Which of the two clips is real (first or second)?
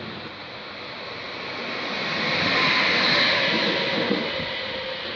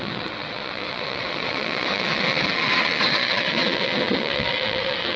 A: first